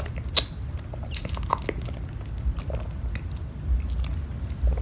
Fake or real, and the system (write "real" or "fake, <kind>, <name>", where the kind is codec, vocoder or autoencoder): real